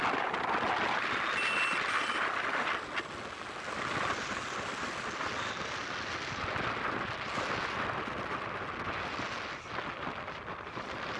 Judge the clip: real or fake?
real